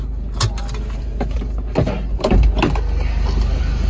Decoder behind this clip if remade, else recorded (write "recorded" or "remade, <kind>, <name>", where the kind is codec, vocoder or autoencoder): recorded